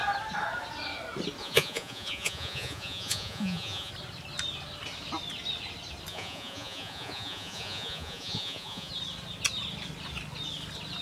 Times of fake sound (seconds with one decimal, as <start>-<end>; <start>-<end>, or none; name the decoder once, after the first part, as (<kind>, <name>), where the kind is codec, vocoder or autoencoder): 1.4-3.9 (vocoder, Vocos); 6.1-8.9